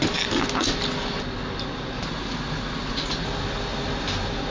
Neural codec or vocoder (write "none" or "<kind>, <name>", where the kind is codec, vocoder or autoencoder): none